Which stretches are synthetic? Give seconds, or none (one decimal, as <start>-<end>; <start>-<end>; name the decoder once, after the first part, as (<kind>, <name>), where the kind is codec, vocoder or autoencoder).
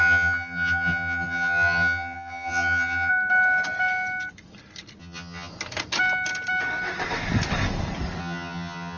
0.0-3.1 (vocoder, HiFi-GAN); 5.0-5.5; 8.2-9.0